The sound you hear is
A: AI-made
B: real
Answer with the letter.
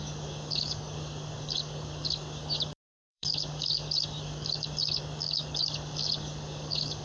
A